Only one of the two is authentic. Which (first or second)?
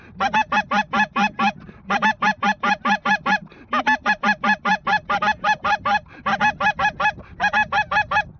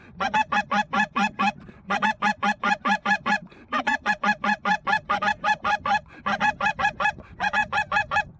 first